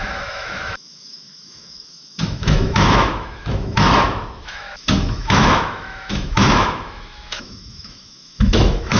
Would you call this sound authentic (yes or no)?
no